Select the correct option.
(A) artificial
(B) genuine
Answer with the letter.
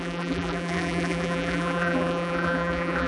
A